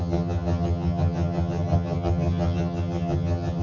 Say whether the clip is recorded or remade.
remade